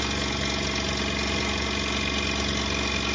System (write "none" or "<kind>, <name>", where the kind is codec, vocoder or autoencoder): none